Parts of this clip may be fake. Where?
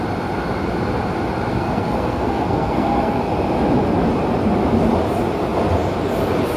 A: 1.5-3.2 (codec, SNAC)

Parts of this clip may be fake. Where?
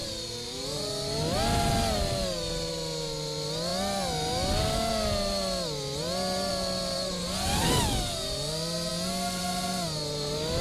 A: none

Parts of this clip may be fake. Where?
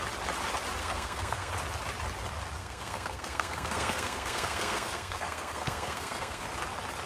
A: 0.8-1.5 (codec, SNAC); 2.6-6.4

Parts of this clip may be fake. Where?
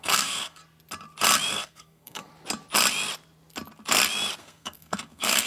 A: 0.0-0.6 (codec, SNAC); 1.5-2.3; 4.4-5.5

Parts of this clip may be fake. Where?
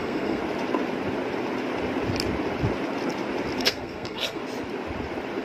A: 0.0-0.4 (codec, SNAC); 3.6-4.4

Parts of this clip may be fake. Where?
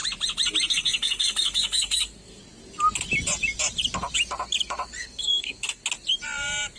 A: 0.7-2.4 (codec, SNAC); 5.0-5.8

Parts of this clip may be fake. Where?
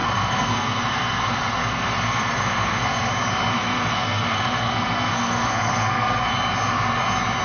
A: 0.0-3.1 (codec, SNAC); 3.5-6.3